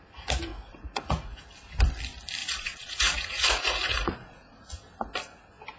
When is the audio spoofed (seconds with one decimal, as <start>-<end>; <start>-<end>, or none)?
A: 0.5-1.4; 2.4-4.7